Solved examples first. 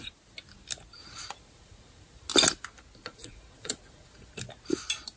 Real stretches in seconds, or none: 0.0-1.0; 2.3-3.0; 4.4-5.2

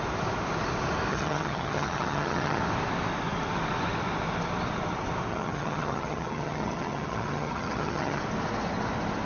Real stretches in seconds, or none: 0.0-1.1; 2.6-5.3; 8.2-9.2

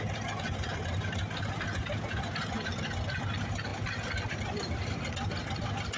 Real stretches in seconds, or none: 0.0-6.0

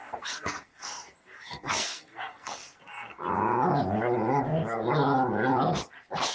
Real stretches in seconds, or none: 3.2-6.3

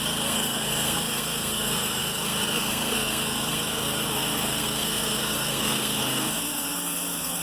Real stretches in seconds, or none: none

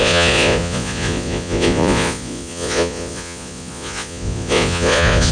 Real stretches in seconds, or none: none

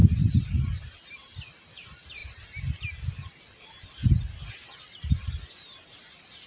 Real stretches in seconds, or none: 0.0-6.5